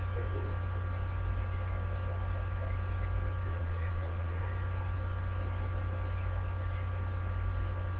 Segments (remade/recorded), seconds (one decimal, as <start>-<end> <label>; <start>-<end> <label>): 0.0-3.5 recorded; 3.5-4.4 remade; 4.4-8.0 recorded